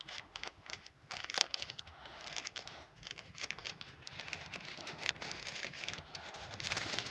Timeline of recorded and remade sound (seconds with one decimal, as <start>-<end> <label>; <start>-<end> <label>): 0.0-7.1 remade